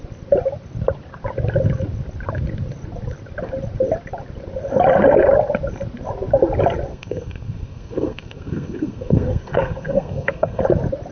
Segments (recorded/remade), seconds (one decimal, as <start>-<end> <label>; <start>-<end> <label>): 0.0-6.9 recorded; 6.9-10.6 remade; 10.6-11.1 recorded